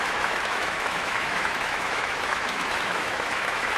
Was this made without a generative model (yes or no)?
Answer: no